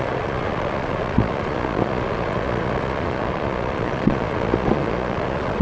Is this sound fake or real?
fake